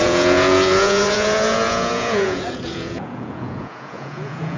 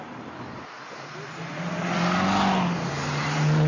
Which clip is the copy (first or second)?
first